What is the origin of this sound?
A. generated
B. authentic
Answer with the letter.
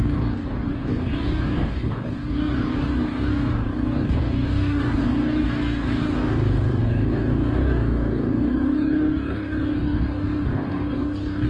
A